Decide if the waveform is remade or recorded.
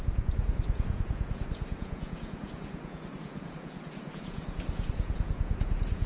remade